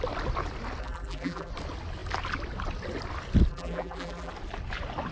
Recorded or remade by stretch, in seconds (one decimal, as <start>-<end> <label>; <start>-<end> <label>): 0.0-0.8 recorded; 0.8-1.5 remade; 1.5-3.5 recorded; 3.5-4.3 remade; 4.3-5.1 recorded